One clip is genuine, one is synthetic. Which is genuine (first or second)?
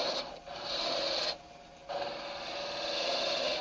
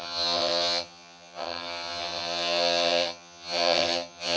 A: first